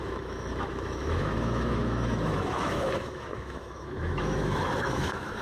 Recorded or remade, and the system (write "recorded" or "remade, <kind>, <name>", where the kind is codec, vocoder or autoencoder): remade, autoencoder, DAC-VAE